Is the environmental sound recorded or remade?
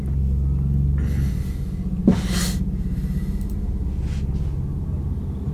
recorded